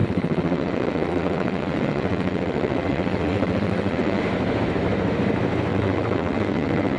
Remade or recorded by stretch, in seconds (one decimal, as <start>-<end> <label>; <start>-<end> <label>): 0.0-4.2 remade; 4.2-5.7 recorded; 5.7-7.0 remade